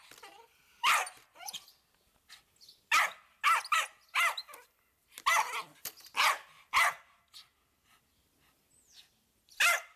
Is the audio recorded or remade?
recorded